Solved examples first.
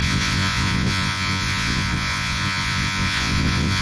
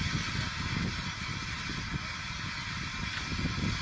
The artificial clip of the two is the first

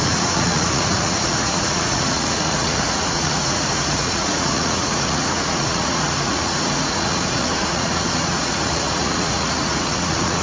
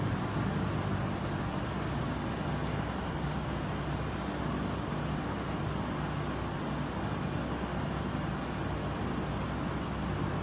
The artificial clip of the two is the first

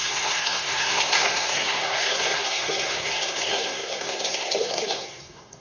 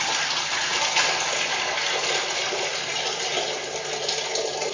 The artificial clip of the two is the first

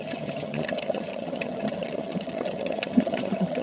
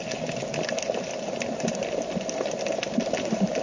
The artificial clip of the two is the first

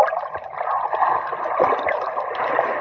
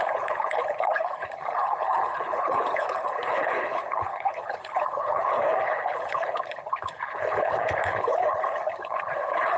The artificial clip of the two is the second